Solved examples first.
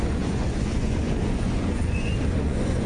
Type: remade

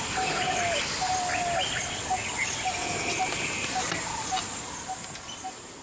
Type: recorded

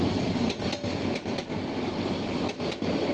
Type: recorded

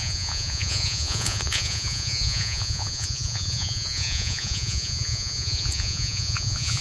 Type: remade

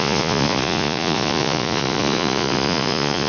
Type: remade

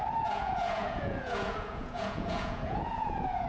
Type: remade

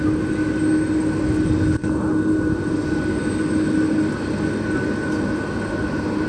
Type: recorded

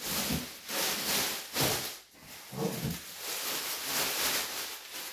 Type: recorded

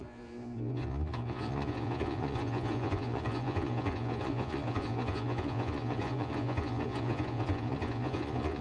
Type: remade